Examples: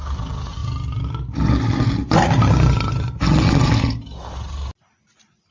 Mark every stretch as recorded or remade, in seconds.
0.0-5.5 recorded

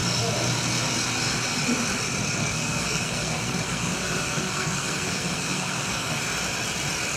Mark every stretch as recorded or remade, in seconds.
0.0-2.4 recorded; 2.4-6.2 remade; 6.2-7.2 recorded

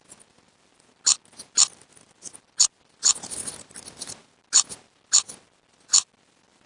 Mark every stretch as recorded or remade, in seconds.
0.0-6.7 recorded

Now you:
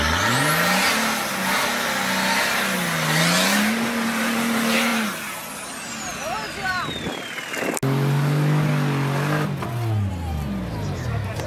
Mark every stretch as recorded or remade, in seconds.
0.0-11.5 recorded

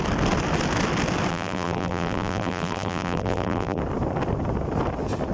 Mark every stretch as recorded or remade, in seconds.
0.0-1.3 recorded; 1.3-3.8 remade; 3.8-5.3 recorded

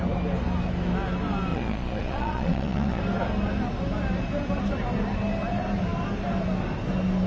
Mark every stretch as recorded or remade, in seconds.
0.0-1.5 recorded; 1.5-3.0 remade; 3.0-7.3 recorded

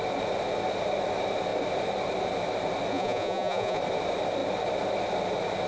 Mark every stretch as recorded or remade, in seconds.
0.0-2.9 recorded; 2.9-3.8 remade; 3.8-5.7 recorded

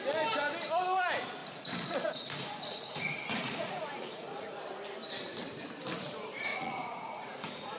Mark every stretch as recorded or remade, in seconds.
0.0-1.4 recorded; 1.4-4.6 remade; 4.6-6.5 recorded; 6.5-7.8 remade